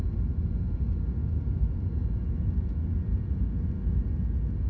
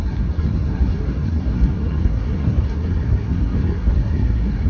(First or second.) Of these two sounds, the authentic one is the first